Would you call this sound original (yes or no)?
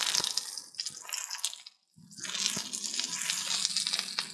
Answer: yes